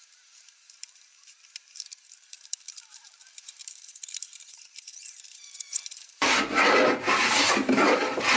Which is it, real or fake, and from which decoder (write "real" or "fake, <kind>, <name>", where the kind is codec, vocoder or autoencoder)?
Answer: fake, vocoder, BigVGAN v2